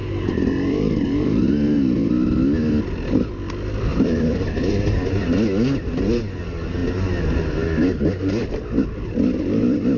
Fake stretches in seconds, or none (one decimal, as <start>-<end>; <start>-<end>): 0.0-2.1; 3.9-4.7